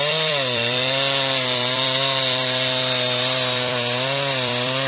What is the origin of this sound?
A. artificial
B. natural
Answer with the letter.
A